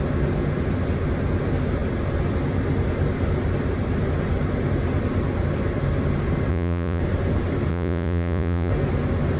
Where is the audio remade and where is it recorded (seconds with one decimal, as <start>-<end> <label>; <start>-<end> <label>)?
0.0-6.5 recorded; 6.5-7.0 remade; 7.0-7.7 recorded; 7.7-8.7 remade; 8.7-9.4 recorded